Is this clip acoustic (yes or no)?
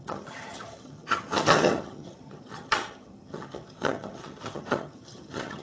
no